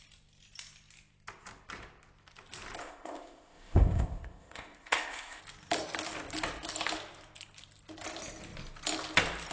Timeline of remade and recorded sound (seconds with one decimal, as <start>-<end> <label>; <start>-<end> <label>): 0.0-2.8 recorded; 2.8-5.4 remade; 5.4-9.5 recorded